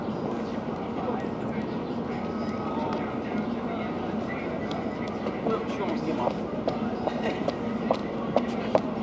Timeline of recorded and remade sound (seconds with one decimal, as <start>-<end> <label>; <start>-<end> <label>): 0.0-9.0 recorded